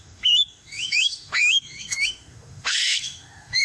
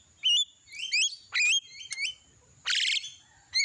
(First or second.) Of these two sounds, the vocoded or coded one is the first